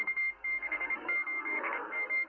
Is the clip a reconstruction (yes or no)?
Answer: yes